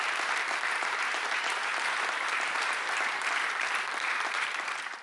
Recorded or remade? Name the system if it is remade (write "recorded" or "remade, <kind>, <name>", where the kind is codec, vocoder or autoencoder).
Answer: remade, vocoder, BigVGAN v2